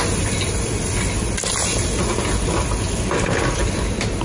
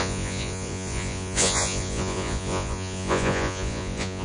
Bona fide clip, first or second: first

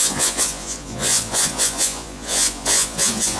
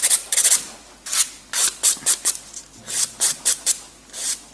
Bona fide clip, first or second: second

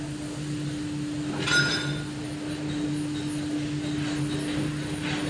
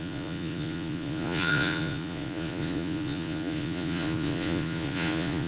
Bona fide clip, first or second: first